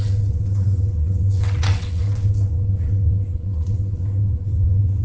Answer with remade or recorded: remade